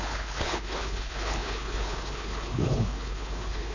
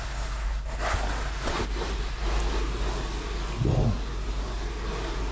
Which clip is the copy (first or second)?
first